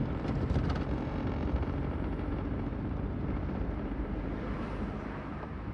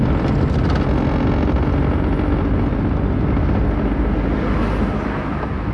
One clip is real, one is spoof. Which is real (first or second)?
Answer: second